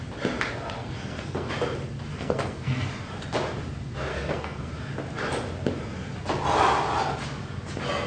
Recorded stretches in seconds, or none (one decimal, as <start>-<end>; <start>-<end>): 0.0-0.8; 1.5-2.1; 2.9-4.1; 4.7-8.1